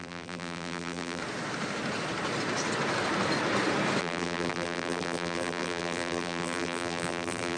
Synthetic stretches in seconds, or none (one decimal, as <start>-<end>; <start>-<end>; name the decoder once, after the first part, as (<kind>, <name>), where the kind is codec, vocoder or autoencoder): 0.0-1.2 (vocoder, BigVGAN v2); 4.0-7.6

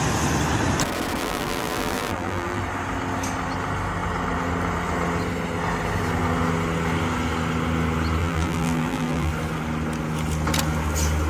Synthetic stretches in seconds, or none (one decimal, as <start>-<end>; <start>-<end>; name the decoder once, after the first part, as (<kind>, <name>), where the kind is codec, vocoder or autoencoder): 1.2-2.6 (vocoder, BigVGAN v2); 8.2-9.3

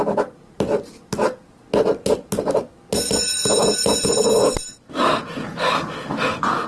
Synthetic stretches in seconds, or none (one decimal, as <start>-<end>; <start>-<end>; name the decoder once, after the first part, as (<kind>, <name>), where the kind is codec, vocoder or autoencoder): none

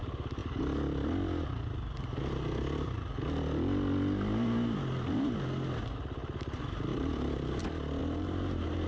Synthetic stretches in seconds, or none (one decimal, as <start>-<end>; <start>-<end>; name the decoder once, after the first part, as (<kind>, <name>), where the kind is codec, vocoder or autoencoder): 6.9-7.6 (vocoder, BigVGAN v2); 8.0-8.9

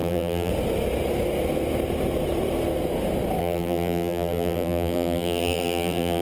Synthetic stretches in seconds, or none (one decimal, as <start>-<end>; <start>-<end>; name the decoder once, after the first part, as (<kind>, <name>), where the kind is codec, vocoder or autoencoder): 0.0-0.5 (vocoder, BigVGAN v2); 3.4-6.2